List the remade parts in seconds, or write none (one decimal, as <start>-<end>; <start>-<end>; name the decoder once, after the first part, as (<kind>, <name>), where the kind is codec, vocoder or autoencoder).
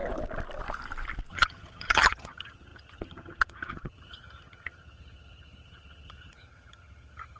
1.3-7.4 (vocoder, HiFi-GAN)